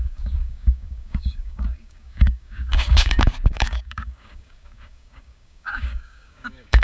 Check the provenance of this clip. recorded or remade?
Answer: remade